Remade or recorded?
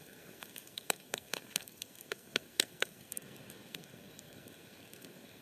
remade